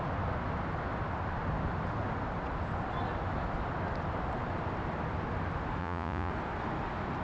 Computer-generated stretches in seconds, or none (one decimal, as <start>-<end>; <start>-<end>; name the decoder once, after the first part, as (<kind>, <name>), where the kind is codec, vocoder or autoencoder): 5.8-6.3 (vocoder, Vocos)